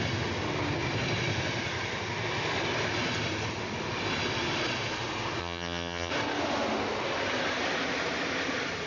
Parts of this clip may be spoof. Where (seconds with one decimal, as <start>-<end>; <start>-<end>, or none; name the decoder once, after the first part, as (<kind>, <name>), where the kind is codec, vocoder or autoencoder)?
5.4-6.1 (vocoder, HiFi-GAN)